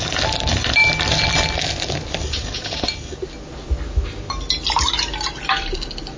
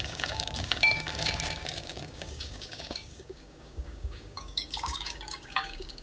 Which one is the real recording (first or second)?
first